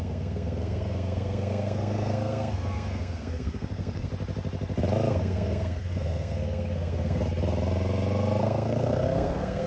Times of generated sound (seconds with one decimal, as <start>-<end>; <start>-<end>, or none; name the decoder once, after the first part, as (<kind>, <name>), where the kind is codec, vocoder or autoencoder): 0.0-4.1 (codec, SNAC); 5.1-7.2; 8.4-9.7